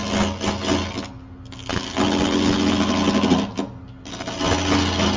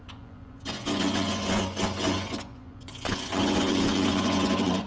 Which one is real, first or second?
first